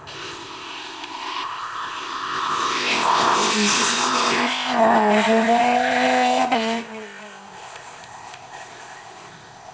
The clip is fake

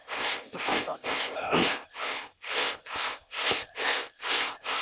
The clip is fake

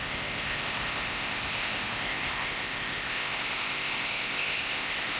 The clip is fake